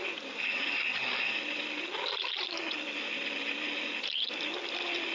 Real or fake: real